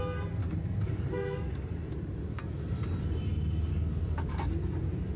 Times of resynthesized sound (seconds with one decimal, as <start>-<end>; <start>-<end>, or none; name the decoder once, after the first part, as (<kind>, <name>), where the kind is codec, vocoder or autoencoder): 0.4-1.8 (codec, DAC); 3.7-4.3